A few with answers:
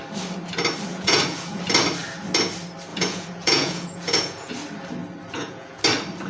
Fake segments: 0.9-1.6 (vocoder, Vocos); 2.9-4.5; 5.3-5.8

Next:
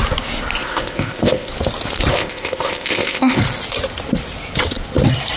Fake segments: 0.6-1.5 (codec, ZipCodec); 2.1-3.4

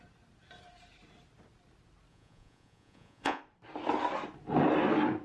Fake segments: 2.1-3.4 (vocoder, Vocos)

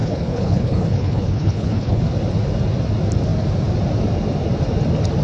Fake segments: 0.0-2.0 (codec, HILCodec)

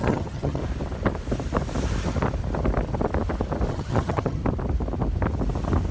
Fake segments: 0.0-0.6 (vocoder, HiFi-GAN); 3.7-4.4

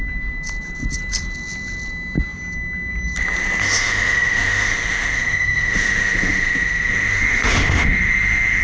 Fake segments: 3.6-8.6 (autoencoder, DAC-VAE)

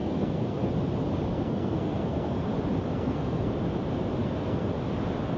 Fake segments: 0.0-0.7 (codec, SNAC); 1.3-2.5; 2.9-3.5; 4.2-4.7

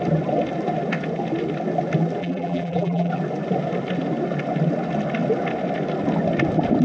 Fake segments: 2.2-3.1 (vocoder, BigVGAN v2)